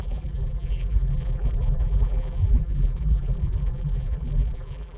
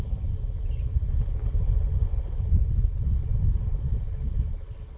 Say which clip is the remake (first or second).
first